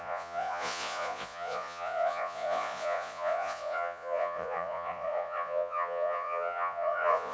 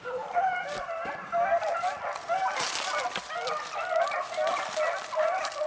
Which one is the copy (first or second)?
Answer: first